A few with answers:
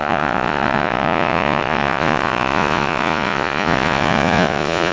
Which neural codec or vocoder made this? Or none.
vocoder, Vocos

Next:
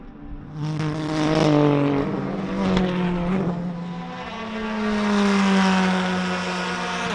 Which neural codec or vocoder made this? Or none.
none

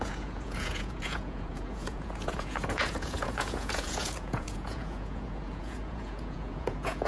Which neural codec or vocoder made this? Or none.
vocoder, Vocos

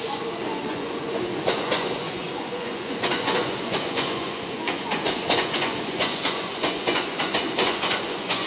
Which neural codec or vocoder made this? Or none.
vocoder, Vocos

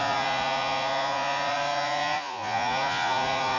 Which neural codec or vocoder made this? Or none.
vocoder, Vocos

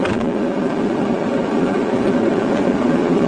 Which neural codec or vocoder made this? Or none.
vocoder, Vocos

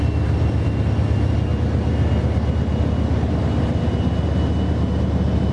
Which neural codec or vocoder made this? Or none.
none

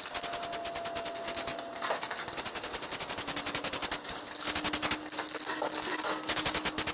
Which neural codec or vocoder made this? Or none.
none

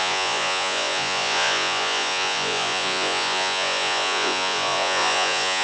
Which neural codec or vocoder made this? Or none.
vocoder, Vocos